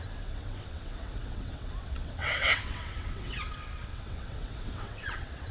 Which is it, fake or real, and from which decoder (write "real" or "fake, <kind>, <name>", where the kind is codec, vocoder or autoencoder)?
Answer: fake, vocoder, WaveNeXt